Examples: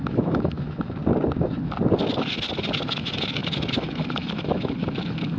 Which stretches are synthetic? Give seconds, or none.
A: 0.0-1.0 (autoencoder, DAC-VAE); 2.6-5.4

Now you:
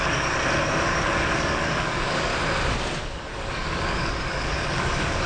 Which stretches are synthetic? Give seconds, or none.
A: 0.0-2.3 (codec, DAC); 3.0-5.3

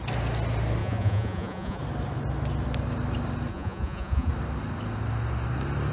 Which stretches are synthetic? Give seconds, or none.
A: 0.8-1.8 (vocoder, Vocos); 3.5-4.3

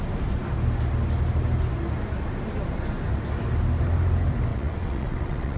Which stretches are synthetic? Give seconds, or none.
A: 4.5-5.6 (vocoder, WaveNeXt)

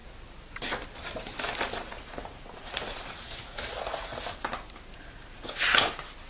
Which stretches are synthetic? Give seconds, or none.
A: 1.9-4.2 (vocoder, Vocos)

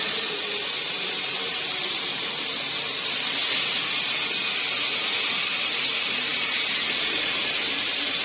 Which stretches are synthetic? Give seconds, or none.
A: 0.0-3.4 (vocoder, BigVGAN v2); 5.5-8.2